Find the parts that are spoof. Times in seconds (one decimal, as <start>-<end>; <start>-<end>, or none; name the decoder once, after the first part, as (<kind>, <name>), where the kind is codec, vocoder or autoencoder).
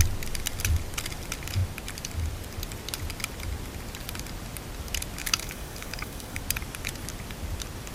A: 5.2-6.4 (codec, DAC)